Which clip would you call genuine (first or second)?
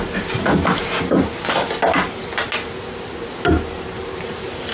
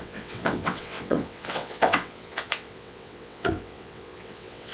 first